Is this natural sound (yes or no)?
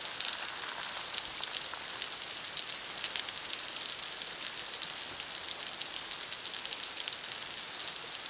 yes